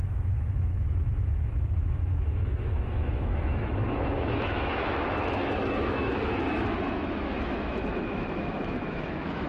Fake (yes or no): yes